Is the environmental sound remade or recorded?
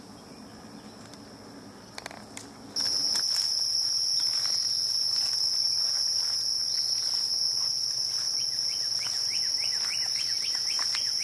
recorded